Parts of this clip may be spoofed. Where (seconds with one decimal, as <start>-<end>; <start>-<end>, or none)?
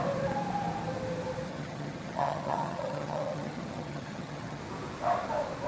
1.5-4.6